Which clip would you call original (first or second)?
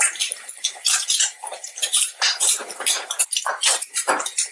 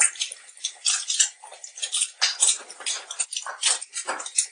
second